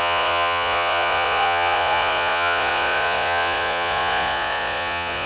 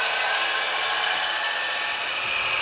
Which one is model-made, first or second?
first